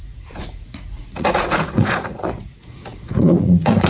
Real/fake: fake